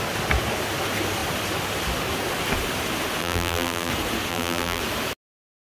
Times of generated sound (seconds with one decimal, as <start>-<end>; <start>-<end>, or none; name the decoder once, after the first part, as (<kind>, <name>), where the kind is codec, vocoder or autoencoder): 3.2-3.9 (vocoder, BigVGAN v2); 4.3-4.8